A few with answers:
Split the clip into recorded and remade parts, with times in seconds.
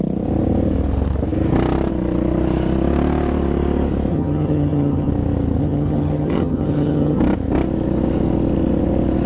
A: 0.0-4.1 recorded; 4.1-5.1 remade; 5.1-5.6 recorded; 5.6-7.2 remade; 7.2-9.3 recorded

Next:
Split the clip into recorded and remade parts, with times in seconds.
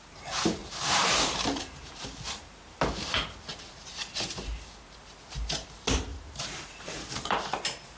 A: 0.0-0.6 recorded; 0.6-2.8 remade; 2.8-3.5 recorded; 3.5-4.3 remade; 4.3-6.1 recorded; 6.1-7.5 remade; 7.5-8.0 recorded